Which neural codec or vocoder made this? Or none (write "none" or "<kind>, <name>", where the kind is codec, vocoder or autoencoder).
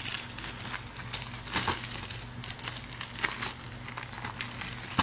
none